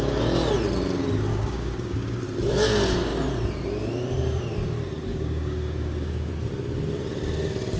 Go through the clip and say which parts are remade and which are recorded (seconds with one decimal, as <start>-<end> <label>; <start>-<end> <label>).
0.0-1.3 recorded; 1.3-2.2 remade; 2.2-5.1 recorded; 5.1-6.3 remade; 6.3-7.8 recorded